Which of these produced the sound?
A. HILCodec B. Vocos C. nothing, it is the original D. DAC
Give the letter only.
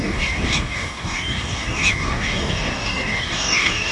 D